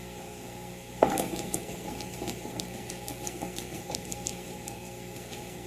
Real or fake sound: fake